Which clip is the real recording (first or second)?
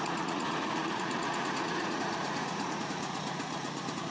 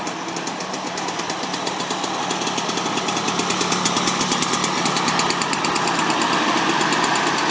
second